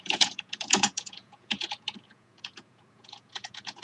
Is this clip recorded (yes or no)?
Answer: no